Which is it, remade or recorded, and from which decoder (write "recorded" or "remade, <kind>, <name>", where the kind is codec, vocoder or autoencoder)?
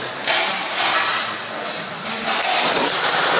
recorded